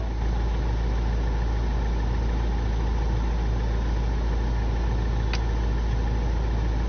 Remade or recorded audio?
recorded